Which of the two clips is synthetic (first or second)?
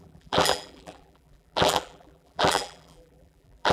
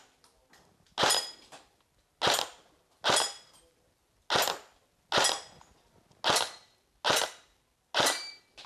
first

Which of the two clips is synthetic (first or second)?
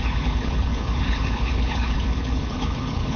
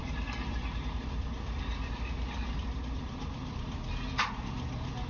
first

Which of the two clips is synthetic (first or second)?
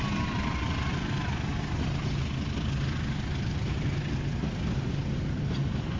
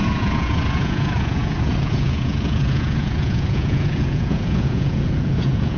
second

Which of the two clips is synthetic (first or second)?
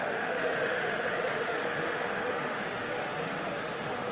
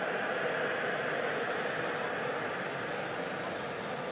first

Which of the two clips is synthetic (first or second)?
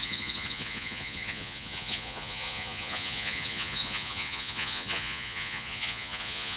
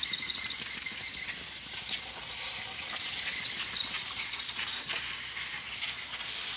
first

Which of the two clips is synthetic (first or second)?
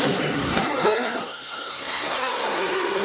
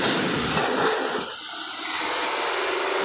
first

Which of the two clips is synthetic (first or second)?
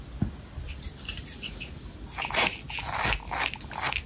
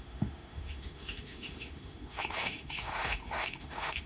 second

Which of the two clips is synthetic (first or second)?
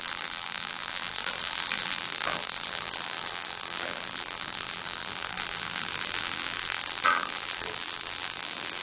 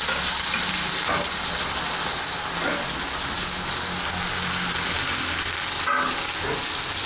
first